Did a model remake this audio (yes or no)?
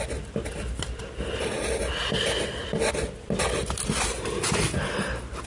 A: no